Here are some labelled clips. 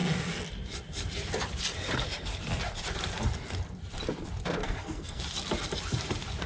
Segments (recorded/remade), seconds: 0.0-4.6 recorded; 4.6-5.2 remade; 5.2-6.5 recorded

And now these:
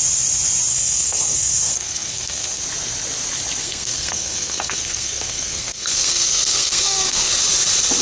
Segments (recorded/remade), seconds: 0.0-0.7 recorded; 0.7-2.6 remade; 2.6-3.6 recorded; 3.6-7.3 remade; 7.3-8.0 recorded